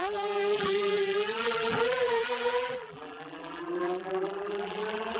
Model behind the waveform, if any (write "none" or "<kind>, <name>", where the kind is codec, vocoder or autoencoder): vocoder, BigVGAN v2